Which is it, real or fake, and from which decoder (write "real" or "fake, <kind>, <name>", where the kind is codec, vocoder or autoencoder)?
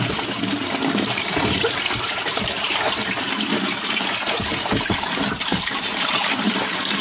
fake, vocoder, BigVGAN v2